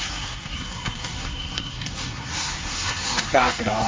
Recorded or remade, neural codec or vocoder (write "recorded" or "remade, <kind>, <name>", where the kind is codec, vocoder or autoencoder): remade, codec, SNAC